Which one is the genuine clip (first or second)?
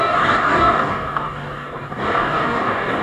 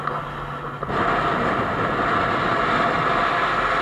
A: second